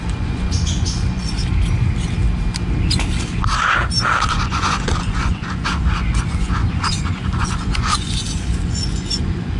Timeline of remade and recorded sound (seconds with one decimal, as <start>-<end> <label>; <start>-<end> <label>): 0.0-1.4 remade; 1.4-4.3 recorded; 4.3-9.6 remade